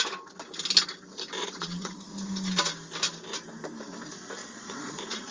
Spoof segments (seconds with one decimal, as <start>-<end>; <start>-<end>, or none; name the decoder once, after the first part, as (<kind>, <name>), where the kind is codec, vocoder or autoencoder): 1.4-2.1 (vocoder, Vocos); 4.4-5.3